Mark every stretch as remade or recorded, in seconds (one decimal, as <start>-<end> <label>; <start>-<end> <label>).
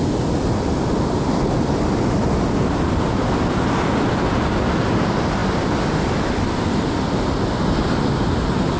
0.0-8.8 recorded